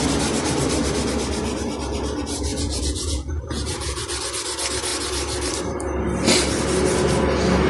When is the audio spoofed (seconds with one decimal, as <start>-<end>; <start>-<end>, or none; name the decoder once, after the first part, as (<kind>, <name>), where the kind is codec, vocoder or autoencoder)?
2.5-4.0 (vocoder, Vocos)